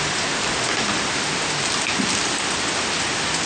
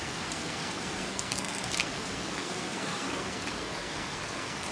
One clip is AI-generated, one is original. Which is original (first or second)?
first